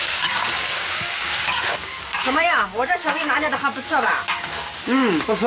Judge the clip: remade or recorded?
remade